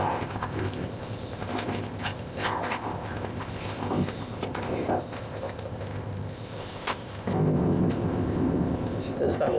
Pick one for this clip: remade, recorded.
remade